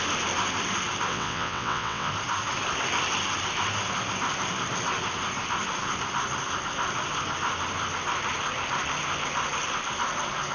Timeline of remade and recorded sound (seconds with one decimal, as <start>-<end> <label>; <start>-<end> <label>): 0.0-1.1 recorded; 1.1-2.1 remade; 2.1-10.5 recorded